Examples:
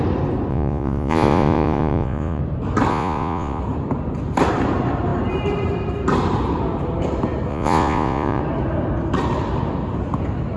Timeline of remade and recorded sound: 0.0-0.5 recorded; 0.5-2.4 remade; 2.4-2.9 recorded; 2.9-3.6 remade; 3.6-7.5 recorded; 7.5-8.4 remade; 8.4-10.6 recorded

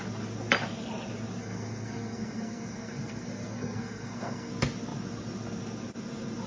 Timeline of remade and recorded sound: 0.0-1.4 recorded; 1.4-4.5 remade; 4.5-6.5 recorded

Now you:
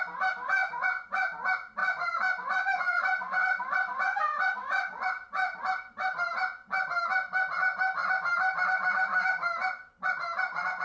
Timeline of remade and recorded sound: 0.0-0.6 recorded; 0.6-1.2 remade; 1.2-1.8 recorded; 1.8-5.6 remade; 5.6-10.8 recorded

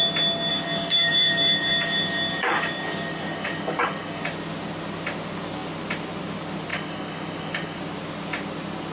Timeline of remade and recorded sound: 0.0-0.5 recorded; 0.5-4.2 remade; 4.2-6.7 recorded; 6.7-7.8 remade; 7.8-8.9 recorded